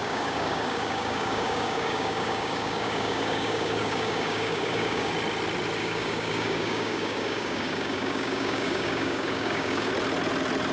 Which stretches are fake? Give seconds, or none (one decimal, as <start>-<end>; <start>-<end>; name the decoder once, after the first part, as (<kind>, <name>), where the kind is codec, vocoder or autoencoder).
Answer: 0.0-5.1 (codec, DAC); 5.8-9.9